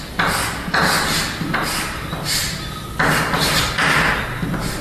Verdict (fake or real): real